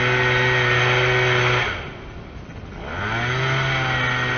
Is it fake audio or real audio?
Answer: real